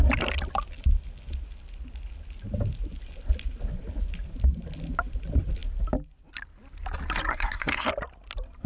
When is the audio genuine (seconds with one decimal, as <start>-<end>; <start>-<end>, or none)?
0.0-7.3; 7.9-8.7